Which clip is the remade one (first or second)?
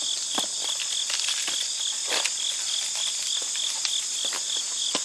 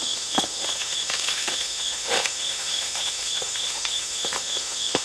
second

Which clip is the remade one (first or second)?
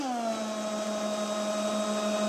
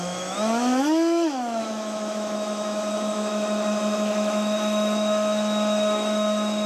second